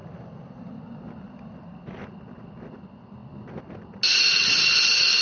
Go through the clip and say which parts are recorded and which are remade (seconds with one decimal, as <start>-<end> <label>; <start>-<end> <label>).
0.0-5.2 recorded